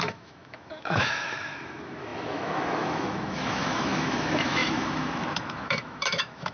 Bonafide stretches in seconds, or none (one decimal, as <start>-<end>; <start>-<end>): none